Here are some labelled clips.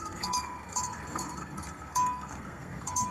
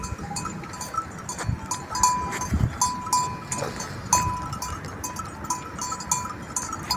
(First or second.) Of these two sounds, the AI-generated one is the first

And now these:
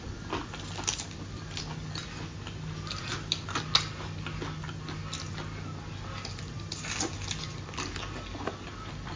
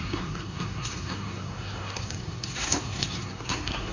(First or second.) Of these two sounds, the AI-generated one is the second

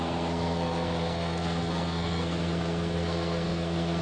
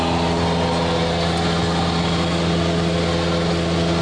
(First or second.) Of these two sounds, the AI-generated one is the first